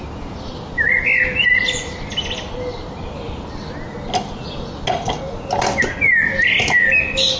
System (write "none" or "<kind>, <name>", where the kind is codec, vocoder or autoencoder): none